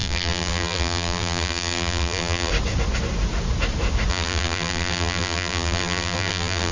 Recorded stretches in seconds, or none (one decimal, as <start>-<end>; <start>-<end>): 2.5-4.1